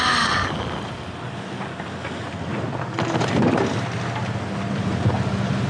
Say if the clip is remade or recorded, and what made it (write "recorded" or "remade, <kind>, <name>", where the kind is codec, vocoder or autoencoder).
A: recorded